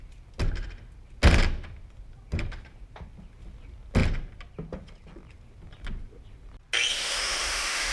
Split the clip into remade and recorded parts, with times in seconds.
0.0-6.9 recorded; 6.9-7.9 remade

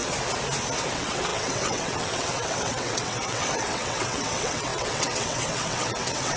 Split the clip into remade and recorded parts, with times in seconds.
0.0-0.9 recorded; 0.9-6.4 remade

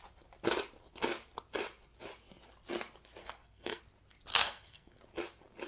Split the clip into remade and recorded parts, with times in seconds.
0.0-3.2 recorded; 3.2-3.8 remade; 3.8-4.3 recorded; 4.3-5.0 remade; 5.0-5.7 recorded

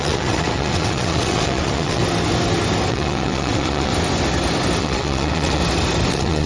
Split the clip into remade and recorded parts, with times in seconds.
0.0-2.0 remade; 2.0-2.9 recorded; 2.9-3.9 remade; 3.9-4.8 recorded; 4.8-5.6 remade; 5.6-6.1 recorded; 6.1-6.5 remade

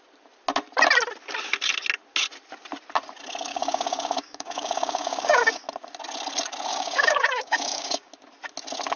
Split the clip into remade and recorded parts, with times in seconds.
0.0-3.5 recorded; 3.5-5.6 remade; 5.6-6.7 recorded; 6.7-8.1 remade; 8.1-9.0 recorded

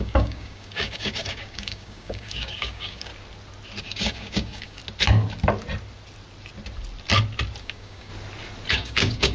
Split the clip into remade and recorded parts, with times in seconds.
0.0-3.1 remade; 3.1-3.8 recorded; 3.8-4.8 remade; 4.8-7.6 recorded; 7.6-8.1 remade; 8.1-8.7 recorded; 8.7-9.3 remade

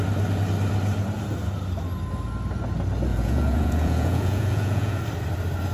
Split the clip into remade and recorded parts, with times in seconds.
0.0-3.1 recorded; 3.1-5.0 remade; 5.0-5.7 recorded

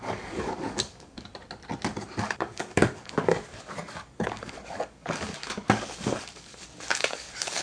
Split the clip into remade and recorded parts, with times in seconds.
0.0-1.3 remade; 1.3-2.2 recorded; 2.2-7.6 remade